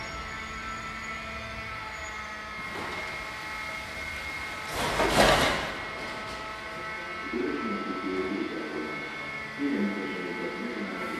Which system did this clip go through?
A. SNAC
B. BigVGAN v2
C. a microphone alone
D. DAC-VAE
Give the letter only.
C